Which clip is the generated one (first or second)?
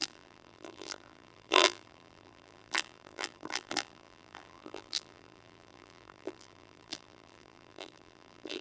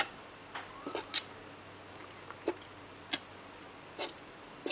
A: first